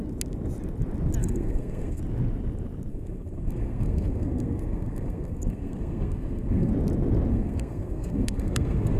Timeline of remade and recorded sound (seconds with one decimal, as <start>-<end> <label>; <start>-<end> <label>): 0.0-1.2 recorded; 1.2-2.0 remade; 2.0-2.9 recorded; 2.9-6.7 remade; 6.7-7.3 recorded; 7.3-9.0 remade